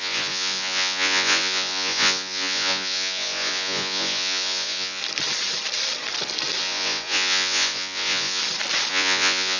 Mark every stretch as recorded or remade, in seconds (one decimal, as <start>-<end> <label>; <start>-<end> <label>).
0.0-5.0 remade; 5.0-6.6 recorded; 6.6-8.4 remade; 8.4-8.9 recorded; 8.9-9.6 remade